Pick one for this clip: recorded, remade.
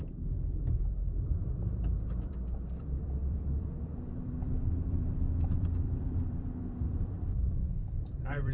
remade